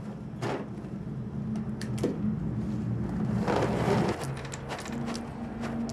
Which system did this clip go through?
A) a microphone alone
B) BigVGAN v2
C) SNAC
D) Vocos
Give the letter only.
A